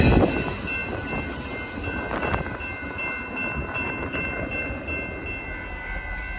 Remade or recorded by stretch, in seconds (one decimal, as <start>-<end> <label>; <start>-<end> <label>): 0.0-6.4 recorded